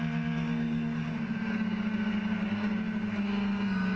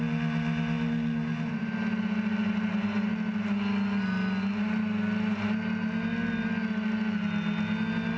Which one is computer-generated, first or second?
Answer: first